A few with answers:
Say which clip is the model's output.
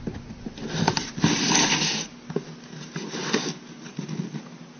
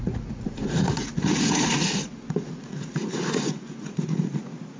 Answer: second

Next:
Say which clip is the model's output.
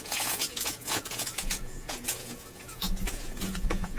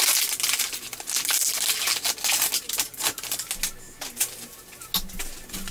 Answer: first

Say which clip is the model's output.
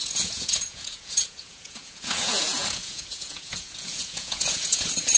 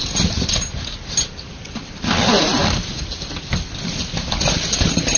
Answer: first